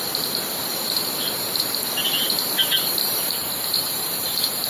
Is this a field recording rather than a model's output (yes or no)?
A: no